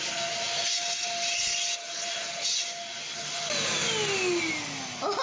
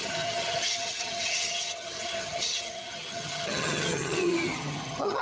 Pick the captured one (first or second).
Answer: first